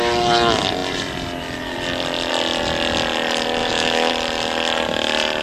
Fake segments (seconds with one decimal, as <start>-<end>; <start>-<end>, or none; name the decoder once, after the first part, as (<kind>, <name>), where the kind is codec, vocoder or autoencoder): 3.6-4.1 (autoencoder, DAC-VAE)